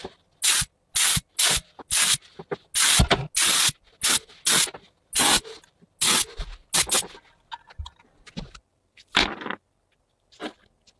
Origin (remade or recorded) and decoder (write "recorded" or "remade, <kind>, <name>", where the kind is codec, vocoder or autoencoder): recorded